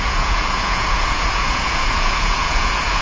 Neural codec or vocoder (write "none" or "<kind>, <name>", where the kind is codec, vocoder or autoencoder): vocoder, Vocos